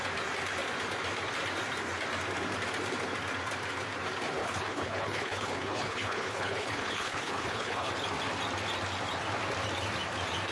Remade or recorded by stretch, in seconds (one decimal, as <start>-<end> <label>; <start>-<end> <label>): 0.0-4.4 recorded; 4.4-7.9 remade; 7.9-10.5 recorded

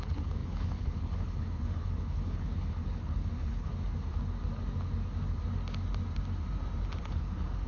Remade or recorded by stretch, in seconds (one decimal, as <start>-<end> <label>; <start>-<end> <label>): 0.0-3.7 remade; 3.7-7.0 recorded; 7.0-7.7 remade

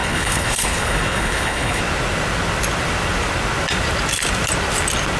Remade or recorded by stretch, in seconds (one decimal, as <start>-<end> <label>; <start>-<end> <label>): 0.0-1.8 remade; 1.8-5.2 recorded

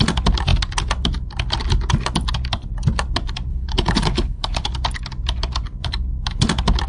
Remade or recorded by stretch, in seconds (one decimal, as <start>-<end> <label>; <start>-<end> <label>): 0.0-3.5 recorded; 3.5-4.7 remade; 4.7-6.9 recorded